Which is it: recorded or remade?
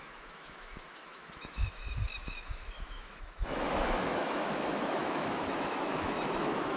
remade